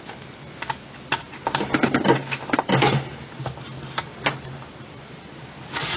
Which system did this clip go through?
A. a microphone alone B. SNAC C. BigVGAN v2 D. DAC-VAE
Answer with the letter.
A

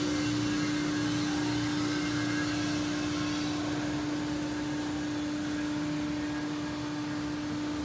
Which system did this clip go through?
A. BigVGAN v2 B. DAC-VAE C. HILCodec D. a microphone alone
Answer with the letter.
D